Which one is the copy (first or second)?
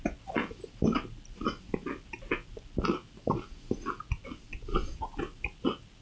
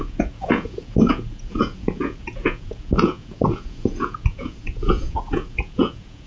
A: second